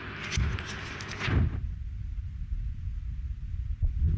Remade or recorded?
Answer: remade